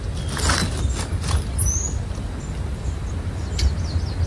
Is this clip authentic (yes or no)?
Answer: yes